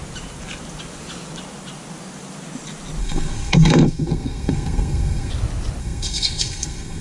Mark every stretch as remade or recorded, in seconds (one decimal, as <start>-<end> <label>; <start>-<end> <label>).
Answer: 0.0-3.0 recorded; 3.0-5.3 remade; 5.3-5.8 recorded; 5.8-7.0 remade